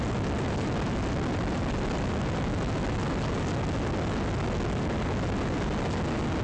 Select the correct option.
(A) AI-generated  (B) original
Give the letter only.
B